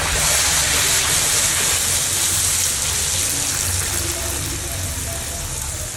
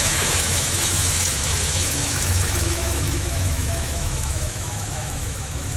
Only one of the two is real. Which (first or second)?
first